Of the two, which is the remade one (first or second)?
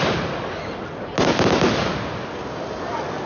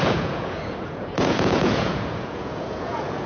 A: second